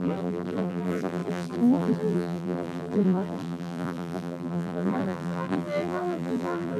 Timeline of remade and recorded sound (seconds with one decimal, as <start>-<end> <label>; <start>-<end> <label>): 0.0-6.8 remade